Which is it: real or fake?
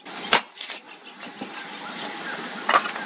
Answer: real